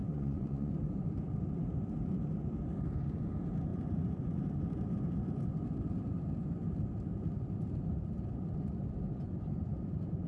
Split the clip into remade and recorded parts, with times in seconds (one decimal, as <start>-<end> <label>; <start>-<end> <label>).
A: 0.0-0.7 remade; 0.7-10.3 recorded